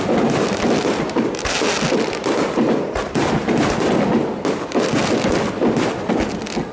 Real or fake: real